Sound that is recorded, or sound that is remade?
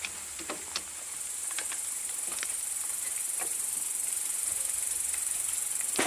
remade